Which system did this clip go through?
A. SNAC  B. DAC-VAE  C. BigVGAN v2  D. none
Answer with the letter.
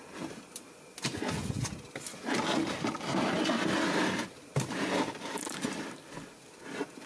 D